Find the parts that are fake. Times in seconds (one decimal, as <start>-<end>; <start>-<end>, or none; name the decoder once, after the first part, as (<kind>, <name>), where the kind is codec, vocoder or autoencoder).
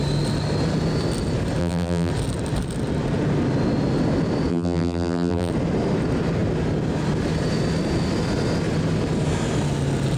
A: 1.6-2.1 (vocoder, BigVGAN v2); 4.5-5.5